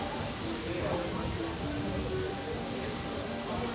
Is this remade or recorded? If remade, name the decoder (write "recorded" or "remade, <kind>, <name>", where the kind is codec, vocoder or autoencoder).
recorded